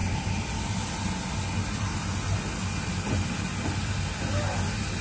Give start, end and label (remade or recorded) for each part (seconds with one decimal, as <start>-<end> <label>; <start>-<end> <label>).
0.0-5.0 recorded